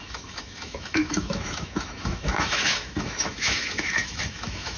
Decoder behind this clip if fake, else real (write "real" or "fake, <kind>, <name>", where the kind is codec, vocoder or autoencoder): fake, autoencoder, DAC-VAE